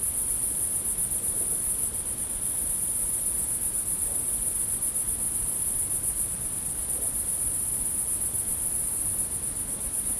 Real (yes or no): yes